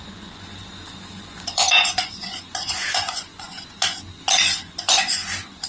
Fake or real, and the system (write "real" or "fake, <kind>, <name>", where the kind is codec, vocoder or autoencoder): fake, vocoder, Vocos